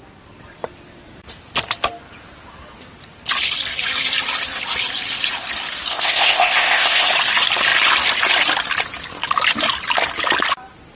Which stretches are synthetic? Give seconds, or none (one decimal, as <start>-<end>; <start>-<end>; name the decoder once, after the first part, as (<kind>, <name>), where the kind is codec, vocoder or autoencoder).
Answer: 5.9-7.1 (codec, ZipCodec)